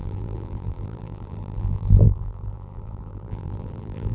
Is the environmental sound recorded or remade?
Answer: remade